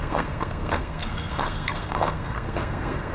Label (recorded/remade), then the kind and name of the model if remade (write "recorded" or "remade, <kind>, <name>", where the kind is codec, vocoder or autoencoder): remade, codec, SNAC